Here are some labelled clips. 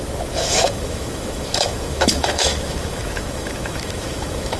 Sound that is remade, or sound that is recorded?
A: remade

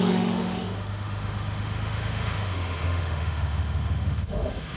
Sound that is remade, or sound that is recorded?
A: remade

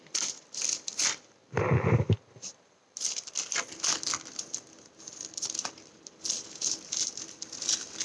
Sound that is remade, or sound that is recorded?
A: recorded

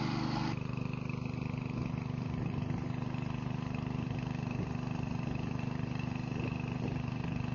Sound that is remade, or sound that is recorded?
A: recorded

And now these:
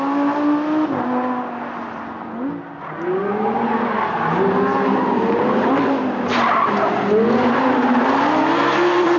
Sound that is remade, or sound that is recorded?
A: recorded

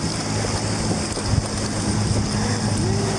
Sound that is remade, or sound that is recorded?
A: recorded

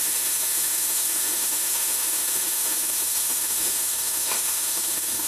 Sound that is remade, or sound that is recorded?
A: remade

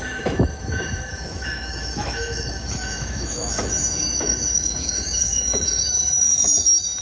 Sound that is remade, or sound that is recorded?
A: remade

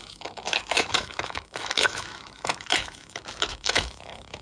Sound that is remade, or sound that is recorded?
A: remade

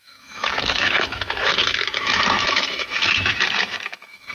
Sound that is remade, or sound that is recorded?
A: remade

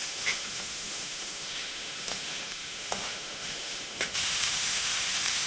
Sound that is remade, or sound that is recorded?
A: remade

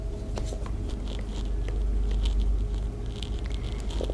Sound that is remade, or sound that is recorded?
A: recorded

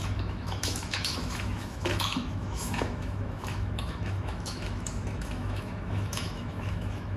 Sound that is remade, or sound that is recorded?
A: remade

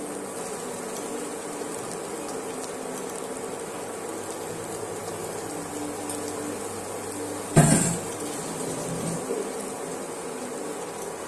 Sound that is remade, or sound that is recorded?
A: recorded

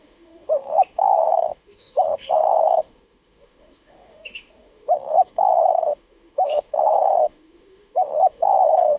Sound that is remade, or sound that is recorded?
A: remade